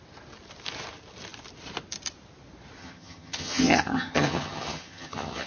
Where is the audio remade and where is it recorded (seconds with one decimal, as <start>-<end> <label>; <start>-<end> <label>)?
0.0-2.8 recorded; 2.8-5.5 remade